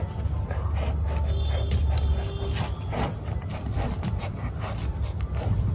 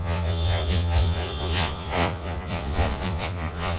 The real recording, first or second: first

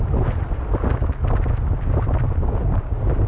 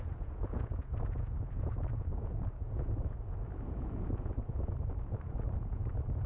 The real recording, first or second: first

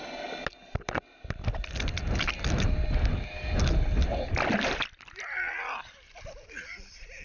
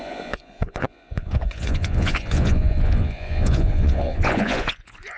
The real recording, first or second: first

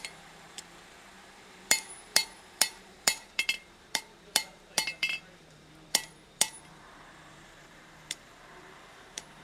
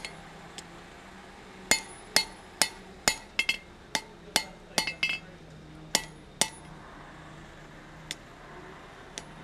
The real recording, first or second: second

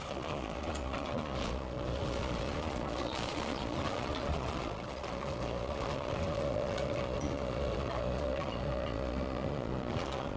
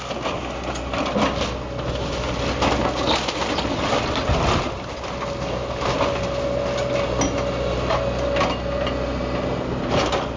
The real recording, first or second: second